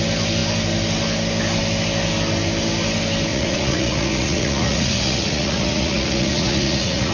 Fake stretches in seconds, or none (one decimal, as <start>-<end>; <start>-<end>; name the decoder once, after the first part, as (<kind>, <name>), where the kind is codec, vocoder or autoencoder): 3.3-7.1 (vocoder, Vocos)